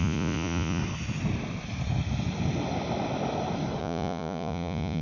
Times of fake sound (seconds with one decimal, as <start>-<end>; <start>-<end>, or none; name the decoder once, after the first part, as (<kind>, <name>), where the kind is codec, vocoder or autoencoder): 0.0-0.8 (vocoder, Vocos); 3.8-5.0